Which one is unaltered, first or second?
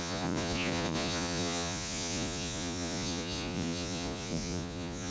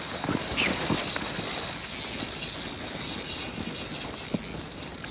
second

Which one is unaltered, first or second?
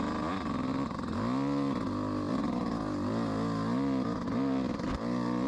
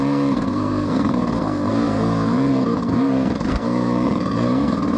first